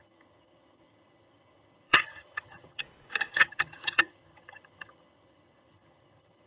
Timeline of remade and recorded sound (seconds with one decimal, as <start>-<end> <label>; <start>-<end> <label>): 0.0-2.8 remade; 2.8-3.3 recorded; 3.3-6.5 remade